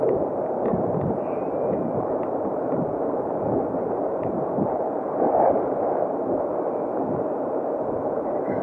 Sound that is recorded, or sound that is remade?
remade